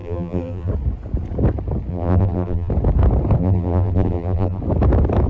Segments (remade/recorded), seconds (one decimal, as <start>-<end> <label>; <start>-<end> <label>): 0.0-0.7 remade; 0.7-1.9 recorded; 1.9-2.7 remade; 2.7-3.4 recorded; 3.4-4.6 remade; 4.6-5.3 recorded